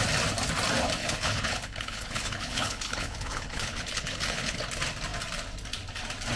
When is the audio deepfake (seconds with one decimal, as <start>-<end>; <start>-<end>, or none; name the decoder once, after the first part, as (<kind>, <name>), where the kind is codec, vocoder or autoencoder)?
1.0-4.6 (codec, HILCodec)